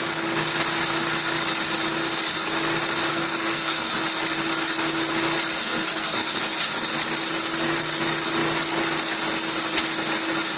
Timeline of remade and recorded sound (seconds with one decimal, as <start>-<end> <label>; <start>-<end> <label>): 0.0-3.1 recorded; 3.1-3.9 remade; 3.9-5.6 recorded; 5.6-6.4 remade; 6.4-10.6 recorded